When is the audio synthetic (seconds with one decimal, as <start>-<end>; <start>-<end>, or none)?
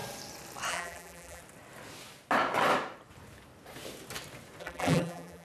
0.7-1.4; 4.6-5.4